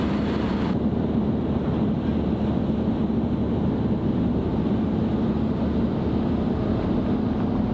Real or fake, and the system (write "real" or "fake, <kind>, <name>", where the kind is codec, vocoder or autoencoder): real